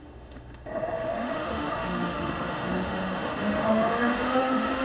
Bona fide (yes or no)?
no